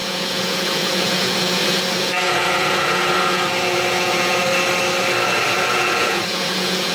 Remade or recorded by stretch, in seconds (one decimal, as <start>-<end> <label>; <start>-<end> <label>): 0.0-4.5 remade; 4.5-5.5 recorded; 5.5-6.9 remade